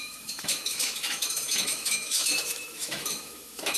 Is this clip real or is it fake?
fake